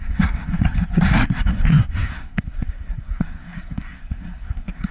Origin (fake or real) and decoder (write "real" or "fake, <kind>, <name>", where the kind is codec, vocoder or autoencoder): fake, codec, SNAC